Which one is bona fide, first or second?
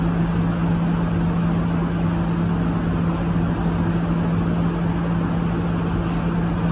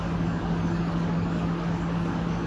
first